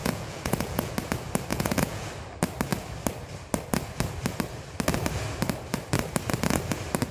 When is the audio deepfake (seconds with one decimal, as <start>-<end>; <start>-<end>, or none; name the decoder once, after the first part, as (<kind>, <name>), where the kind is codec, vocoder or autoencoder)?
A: 0.0-0.9 (vocoder, Vocos); 1.5-2.1